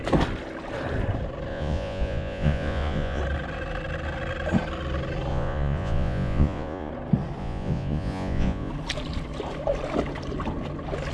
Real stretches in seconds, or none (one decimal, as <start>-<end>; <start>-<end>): 0.0-1.5; 3.2-5.3; 6.9-7.4; 8.7-11.1